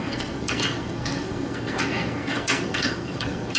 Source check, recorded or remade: remade